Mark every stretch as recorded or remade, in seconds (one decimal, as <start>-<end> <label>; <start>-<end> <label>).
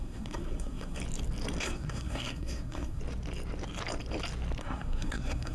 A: 0.0-1.0 remade; 1.0-1.6 recorded; 1.6-3.0 remade; 3.0-4.6 recorded; 4.6-5.5 remade